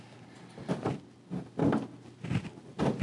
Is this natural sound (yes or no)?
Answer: yes